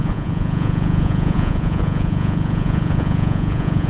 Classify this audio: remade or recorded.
remade